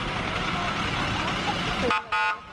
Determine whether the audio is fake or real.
real